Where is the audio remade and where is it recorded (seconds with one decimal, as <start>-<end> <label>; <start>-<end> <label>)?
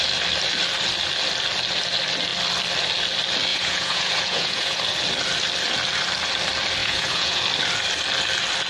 0.0-3.5 recorded; 3.5-4.8 remade; 4.8-6.8 recorded; 6.8-7.4 remade; 7.4-8.7 recorded